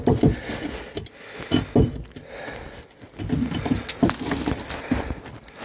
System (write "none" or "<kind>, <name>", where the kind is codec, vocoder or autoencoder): none